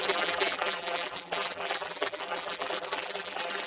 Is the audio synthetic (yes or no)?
yes